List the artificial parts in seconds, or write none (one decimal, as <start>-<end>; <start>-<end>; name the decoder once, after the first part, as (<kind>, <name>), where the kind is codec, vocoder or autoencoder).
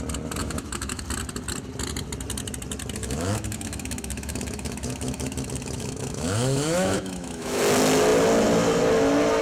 0.4-1.0 (autoencoder, DAC-VAE); 3.0-7.6